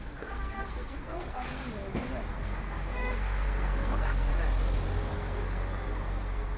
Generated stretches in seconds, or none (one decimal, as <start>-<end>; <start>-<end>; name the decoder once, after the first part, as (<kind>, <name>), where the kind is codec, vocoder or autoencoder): 0.0-1.6 (codec, SNAC); 2.3-4.3; 5.1-6.6